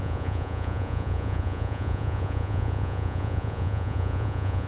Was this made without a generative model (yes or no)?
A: no